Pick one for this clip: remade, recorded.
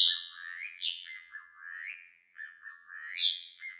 remade